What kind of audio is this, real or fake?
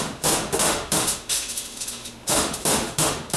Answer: fake